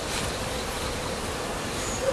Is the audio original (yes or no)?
yes